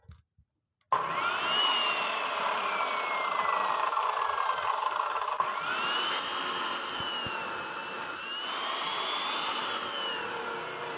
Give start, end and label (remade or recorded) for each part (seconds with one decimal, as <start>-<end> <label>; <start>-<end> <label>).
0.0-11.0 recorded